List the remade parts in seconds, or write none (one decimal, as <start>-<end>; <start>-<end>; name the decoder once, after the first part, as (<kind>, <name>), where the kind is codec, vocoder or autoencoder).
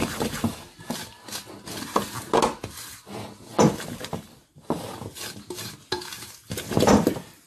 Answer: none